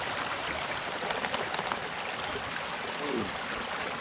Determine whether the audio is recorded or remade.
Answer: recorded